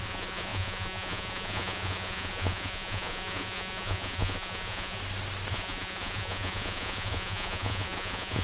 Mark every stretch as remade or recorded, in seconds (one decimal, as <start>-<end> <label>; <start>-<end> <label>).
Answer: 0.0-5.0 remade; 5.0-5.5 recorded; 5.5-8.4 remade